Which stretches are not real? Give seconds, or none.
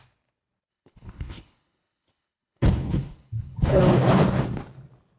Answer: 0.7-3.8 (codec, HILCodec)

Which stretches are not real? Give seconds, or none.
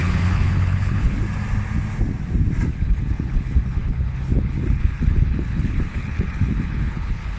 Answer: 0.0-1.2 (codec, HILCodec); 2.7-7.4